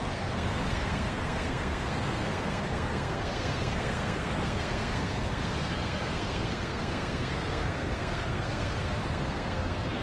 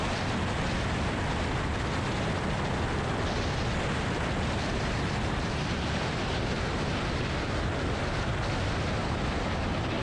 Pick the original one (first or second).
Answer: second